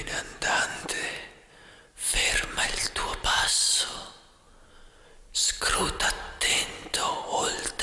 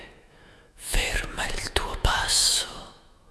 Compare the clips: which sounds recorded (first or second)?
first